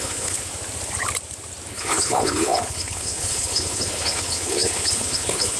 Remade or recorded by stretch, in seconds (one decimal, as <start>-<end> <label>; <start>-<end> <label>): 0.0-0.5 remade; 0.5-1.7 recorded; 1.7-5.6 remade